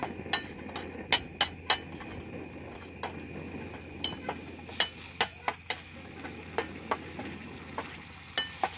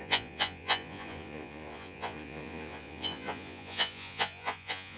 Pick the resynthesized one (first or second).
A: second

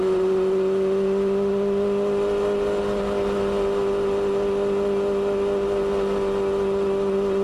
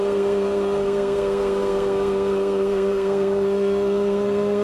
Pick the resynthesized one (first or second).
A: second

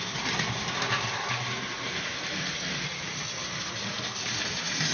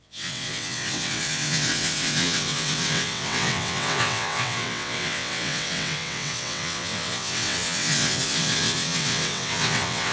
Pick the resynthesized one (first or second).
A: second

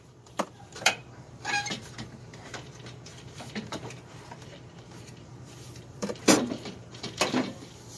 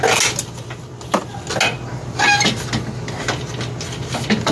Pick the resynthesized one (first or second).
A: first